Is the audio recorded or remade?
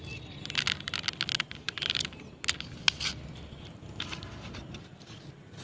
recorded